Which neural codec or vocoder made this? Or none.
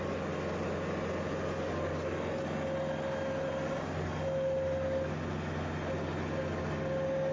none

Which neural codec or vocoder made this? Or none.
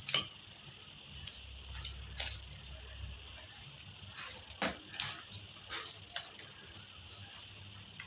none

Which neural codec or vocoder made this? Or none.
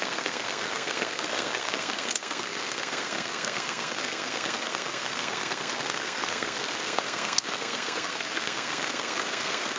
codec, SNAC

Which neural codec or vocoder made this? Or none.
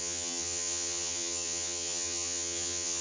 vocoder, HiFi-GAN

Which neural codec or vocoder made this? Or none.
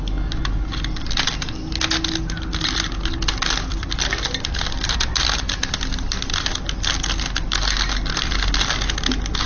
none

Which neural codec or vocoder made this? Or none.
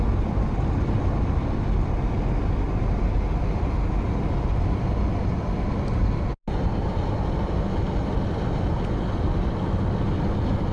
none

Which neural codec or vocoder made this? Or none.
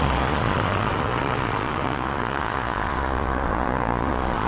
vocoder, Vocos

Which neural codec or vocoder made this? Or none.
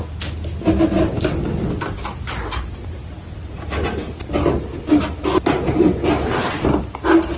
none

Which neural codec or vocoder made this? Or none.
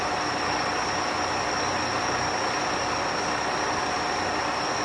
none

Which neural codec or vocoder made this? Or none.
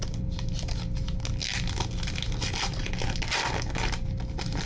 none